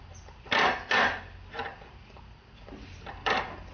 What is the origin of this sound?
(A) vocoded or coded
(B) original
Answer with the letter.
B